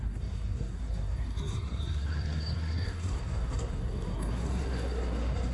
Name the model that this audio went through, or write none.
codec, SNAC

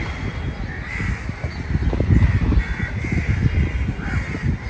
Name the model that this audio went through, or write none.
none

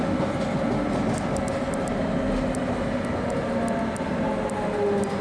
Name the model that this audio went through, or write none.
none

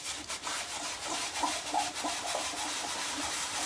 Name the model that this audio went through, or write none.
vocoder, BigVGAN v2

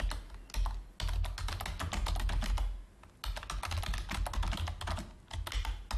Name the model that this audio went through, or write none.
none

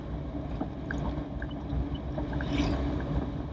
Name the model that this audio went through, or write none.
none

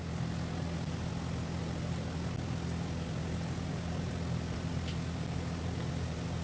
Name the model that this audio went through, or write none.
none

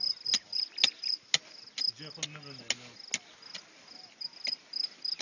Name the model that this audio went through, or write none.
none